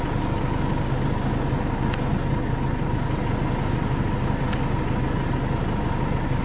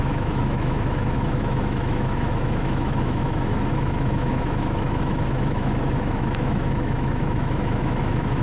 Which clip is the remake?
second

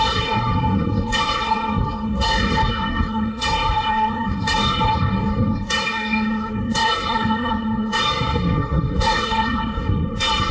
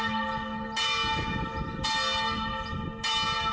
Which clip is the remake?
first